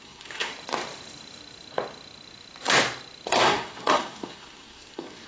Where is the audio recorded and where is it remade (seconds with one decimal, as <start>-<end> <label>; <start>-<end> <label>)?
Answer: 0.0-0.5 remade; 0.5-3.3 recorded; 3.3-5.3 remade